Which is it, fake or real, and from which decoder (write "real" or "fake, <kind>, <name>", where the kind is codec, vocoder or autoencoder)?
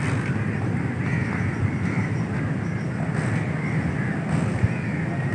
real